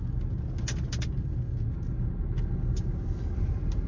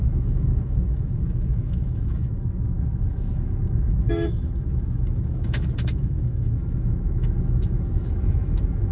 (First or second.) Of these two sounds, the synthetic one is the second